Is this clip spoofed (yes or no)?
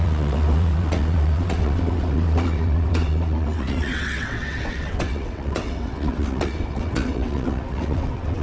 yes